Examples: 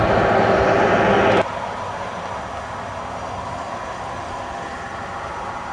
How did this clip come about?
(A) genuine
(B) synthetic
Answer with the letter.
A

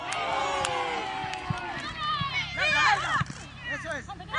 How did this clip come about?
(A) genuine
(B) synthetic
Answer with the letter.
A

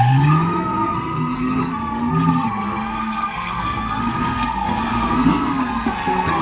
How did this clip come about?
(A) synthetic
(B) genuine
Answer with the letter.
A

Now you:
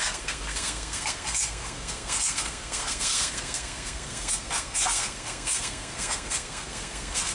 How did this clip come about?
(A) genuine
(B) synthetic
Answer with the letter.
B